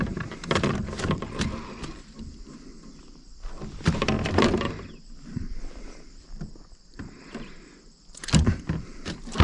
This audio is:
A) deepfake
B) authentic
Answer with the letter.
A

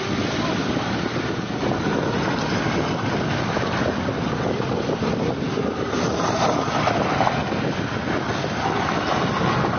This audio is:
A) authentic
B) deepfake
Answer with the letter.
A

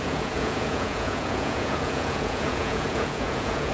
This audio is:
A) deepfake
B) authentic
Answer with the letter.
A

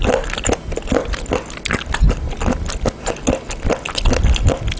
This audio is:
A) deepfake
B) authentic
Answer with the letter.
B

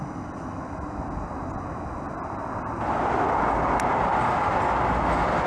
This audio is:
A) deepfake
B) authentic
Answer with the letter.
B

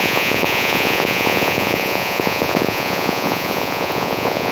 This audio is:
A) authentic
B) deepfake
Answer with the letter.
B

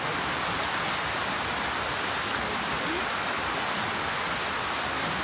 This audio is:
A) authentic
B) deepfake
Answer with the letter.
A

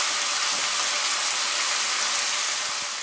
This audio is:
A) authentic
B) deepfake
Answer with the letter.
A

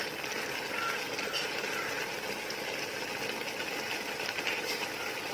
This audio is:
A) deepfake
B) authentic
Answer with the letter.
B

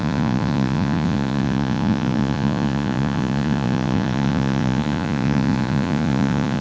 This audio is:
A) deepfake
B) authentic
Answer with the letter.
A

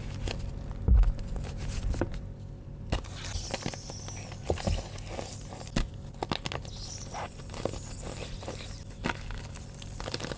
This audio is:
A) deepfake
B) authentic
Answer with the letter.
B